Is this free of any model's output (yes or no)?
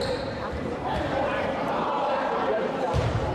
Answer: no